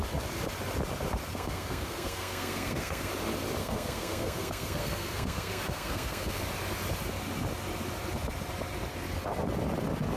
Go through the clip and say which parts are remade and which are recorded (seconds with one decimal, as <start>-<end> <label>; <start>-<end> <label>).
0.0-1.3 recorded; 1.3-3.1 remade; 3.1-3.6 recorded; 3.6-6.4 remade; 6.4-10.2 recorded